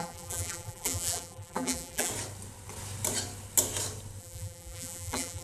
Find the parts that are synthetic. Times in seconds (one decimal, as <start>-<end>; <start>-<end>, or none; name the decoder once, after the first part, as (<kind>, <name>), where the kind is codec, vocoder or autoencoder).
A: 0.0-2.1 (vocoder, BigVGAN v2); 4.2-5.4